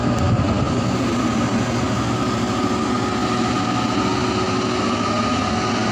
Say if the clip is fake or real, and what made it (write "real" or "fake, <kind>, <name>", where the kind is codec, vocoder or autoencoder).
real